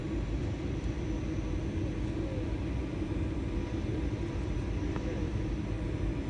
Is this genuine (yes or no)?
yes